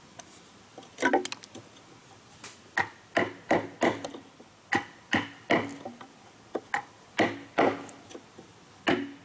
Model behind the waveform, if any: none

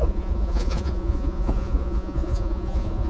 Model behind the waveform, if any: vocoder, Vocos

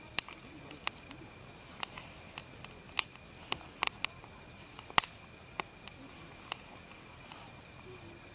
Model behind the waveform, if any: none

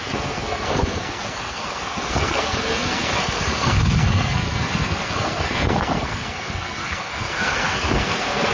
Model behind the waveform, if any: codec, SNAC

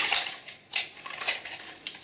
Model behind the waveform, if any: none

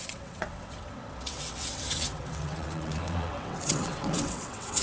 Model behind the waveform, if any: vocoder, WaveNeXt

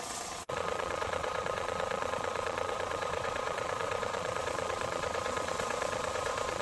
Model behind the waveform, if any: vocoder, Vocos